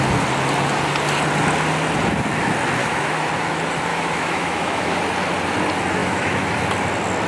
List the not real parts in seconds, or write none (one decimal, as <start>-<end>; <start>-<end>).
2.8-3.3; 3.9-5.0; 6.0-6.6